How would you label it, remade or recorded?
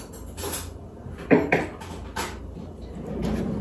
recorded